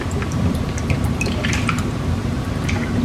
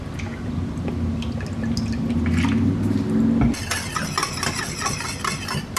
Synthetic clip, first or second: first